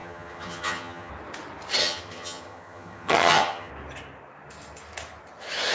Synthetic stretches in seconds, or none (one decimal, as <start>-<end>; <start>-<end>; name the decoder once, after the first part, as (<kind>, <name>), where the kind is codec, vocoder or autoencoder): 0.0-1.1 (vocoder, HiFi-GAN); 1.8-3.7